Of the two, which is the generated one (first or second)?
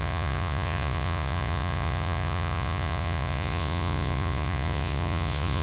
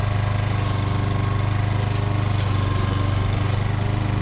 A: first